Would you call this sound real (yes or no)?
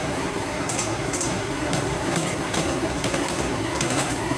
no